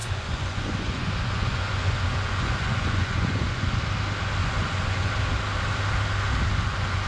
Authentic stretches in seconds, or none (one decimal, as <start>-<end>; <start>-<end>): 3.8-4.4; 5.1-6.5